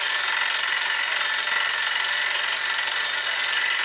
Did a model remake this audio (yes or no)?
no